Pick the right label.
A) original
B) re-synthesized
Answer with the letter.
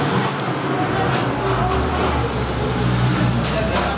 A